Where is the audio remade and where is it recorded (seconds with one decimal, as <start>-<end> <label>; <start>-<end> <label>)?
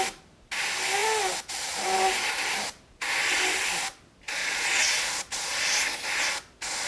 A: 0.0-4.4 recorded; 4.4-5.0 remade; 5.0-6.9 recorded